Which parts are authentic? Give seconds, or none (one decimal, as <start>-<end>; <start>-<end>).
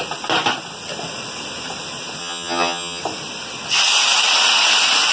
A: 0.0-2.2; 3.0-5.1